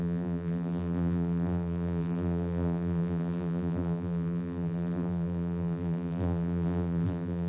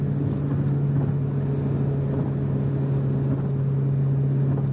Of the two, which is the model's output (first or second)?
first